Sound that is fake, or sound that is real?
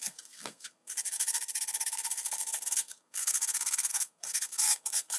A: fake